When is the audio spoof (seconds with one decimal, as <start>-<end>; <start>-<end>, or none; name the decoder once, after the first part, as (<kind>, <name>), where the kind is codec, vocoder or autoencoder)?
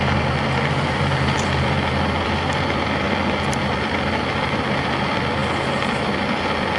0.0-6.8 (vocoder, BigVGAN v2)